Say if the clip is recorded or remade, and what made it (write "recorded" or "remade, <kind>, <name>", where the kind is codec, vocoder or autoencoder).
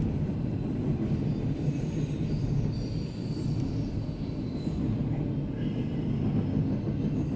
recorded